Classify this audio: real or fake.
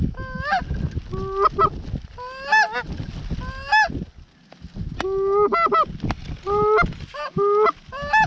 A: real